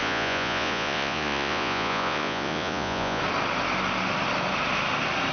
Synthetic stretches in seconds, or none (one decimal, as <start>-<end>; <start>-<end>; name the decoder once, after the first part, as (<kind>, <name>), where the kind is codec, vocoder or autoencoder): 0.0-3.2 (vocoder, Vocos)